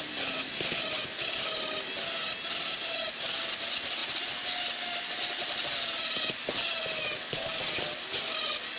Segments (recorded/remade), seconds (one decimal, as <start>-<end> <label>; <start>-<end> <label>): 0.0-8.8 recorded

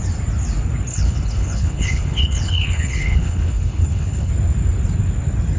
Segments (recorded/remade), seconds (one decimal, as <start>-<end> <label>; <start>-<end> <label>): 0.0-0.9 recorded; 0.9-4.3 remade; 4.3-5.6 recorded

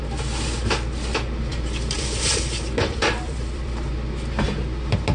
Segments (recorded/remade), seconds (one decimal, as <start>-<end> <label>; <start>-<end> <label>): 0.0-1.5 recorded; 1.5-3.9 remade; 3.9-5.1 recorded

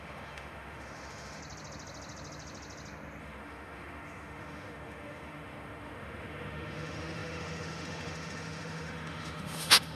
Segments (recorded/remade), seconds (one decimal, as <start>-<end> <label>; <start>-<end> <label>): 0.0-1.4 remade; 1.4-3.2 recorded; 3.2-10.0 remade